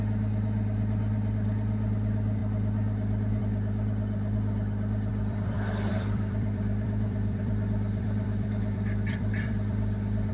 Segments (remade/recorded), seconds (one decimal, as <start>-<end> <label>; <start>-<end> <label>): 0.0-5.1 recorded; 5.1-10.3 remade